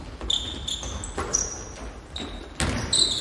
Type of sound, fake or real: real